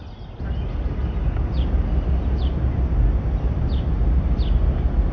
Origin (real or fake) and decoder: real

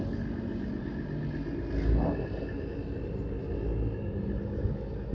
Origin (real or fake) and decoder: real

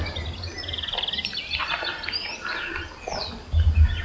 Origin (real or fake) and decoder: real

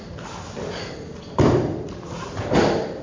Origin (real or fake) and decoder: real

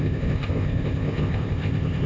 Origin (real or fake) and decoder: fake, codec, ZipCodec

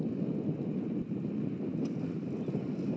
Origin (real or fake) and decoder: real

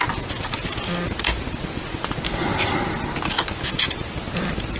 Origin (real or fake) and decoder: real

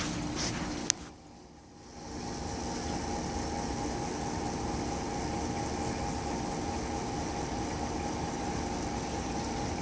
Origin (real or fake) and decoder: real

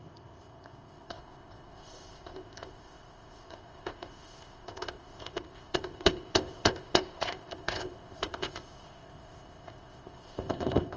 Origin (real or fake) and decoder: fake, codec, ZipCodec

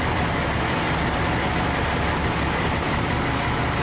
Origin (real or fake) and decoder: real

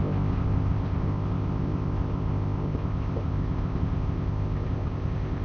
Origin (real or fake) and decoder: fake, codec, ZipCodec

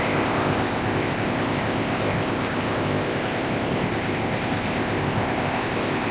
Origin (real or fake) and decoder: fake, codec, ZipCodec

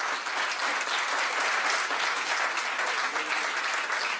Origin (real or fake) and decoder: real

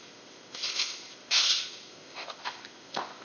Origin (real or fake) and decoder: fake, codec, ZipCodec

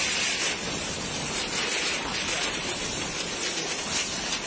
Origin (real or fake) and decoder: real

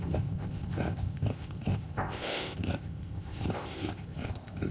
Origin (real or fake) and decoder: fake, codec, ZipCodec